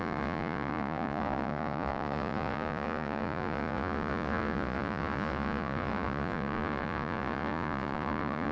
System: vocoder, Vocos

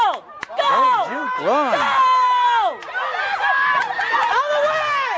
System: none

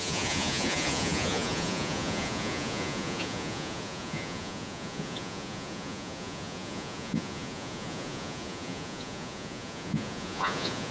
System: vocoder, Vocos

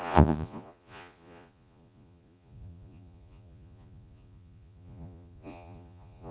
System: vocoder, Vocos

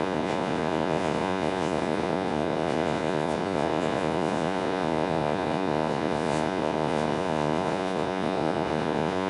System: vocoder, Vocos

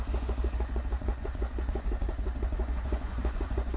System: vocoder, Vocos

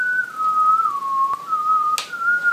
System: none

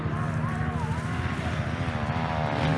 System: none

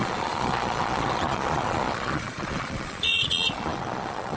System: vocoder, Vocos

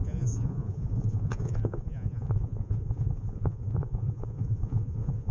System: vocoder, Vocos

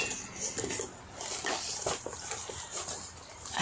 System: none